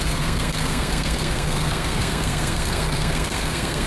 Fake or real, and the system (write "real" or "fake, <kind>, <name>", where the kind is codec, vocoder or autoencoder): fake, codec, SNAC